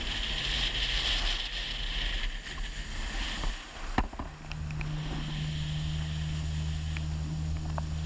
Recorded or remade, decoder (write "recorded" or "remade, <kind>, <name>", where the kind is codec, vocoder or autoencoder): recorded